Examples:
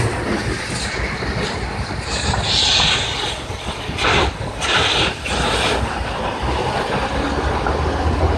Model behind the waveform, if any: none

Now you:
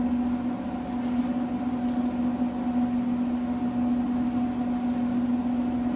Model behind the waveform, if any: none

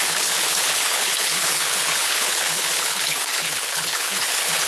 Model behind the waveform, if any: codec, HILCodec